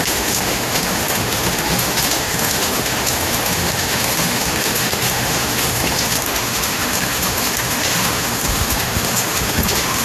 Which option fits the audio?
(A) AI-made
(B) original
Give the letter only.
A